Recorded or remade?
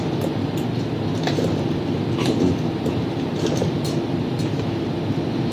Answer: recorded